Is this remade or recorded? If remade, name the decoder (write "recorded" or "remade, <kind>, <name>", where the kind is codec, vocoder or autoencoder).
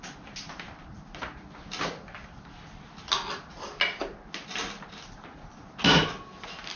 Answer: recorded